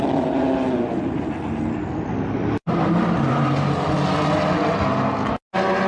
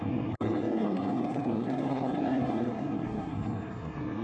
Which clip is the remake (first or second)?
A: second